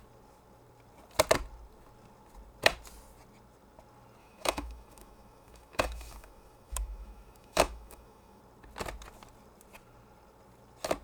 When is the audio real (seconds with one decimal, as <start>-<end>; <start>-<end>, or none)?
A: 0.0-4.2; 8.4-11.0